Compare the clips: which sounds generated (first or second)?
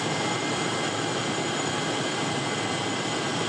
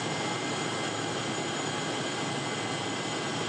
first